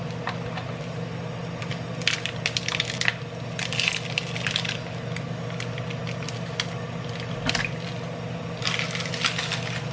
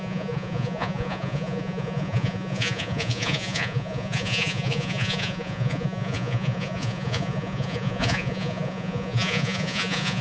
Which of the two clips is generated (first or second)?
second